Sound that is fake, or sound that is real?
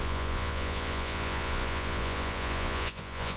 fake